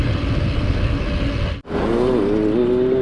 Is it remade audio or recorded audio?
recorded